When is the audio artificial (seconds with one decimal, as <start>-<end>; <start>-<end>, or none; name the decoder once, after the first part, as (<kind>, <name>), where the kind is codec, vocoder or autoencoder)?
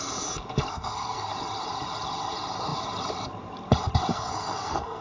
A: 0.7-1.3 (codec, SNAC); 4.1-5.0